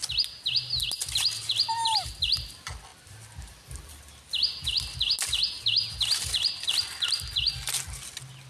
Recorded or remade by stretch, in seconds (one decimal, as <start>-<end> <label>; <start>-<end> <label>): 0.0-2.9 recorded; 2.9-3.9 remade; 3.9-8.5 recorded